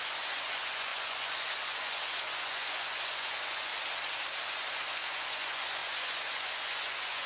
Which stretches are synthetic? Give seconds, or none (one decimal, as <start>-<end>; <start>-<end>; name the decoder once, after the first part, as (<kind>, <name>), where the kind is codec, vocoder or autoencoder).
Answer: 0.0-3.7 (vocoder, Vocos); 4.5-7.3